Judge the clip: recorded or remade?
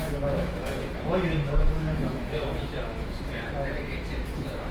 remade